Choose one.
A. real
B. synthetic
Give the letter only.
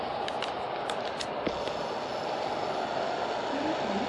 A